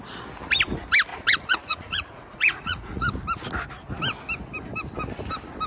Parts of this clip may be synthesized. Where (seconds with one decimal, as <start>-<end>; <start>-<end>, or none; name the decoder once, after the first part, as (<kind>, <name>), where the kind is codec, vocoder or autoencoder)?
1.1-3.1 (vocoder, Vocos)